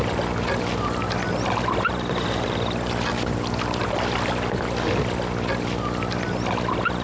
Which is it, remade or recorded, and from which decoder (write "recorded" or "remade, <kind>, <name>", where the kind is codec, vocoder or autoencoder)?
recorded